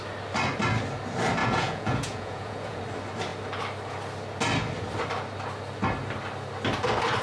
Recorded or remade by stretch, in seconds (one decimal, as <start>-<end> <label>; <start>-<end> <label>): 0.0-1.4 recorded; 1.4-2.8 remade; 2.8-7.2 recorded